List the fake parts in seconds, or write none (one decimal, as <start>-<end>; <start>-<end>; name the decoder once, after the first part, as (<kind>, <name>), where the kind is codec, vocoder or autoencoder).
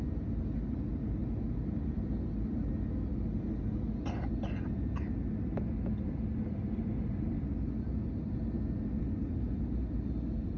none